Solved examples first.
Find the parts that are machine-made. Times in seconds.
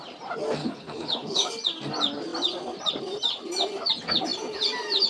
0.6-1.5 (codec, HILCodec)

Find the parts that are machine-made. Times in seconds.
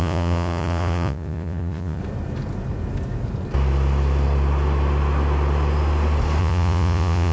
0.0-2.0 (vocoder, Vocos); 6.4-7.3